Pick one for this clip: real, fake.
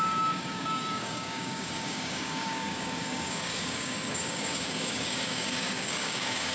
fake